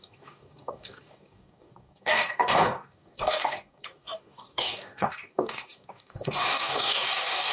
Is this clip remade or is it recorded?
remade